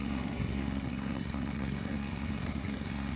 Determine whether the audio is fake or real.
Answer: fake